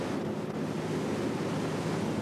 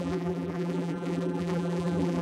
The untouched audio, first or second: first